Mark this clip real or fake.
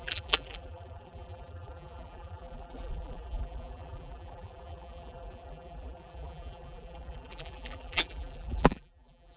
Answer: fake